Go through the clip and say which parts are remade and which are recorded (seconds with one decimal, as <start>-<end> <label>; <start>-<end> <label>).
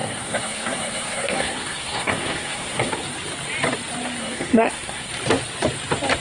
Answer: 0.0-2.9 remade; 2.9-4.2 recorded; 4.2-5.1 remade; 5.1-6.2 recorded